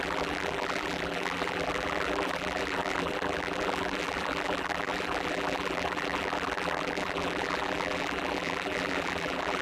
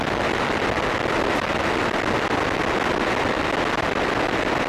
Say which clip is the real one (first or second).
second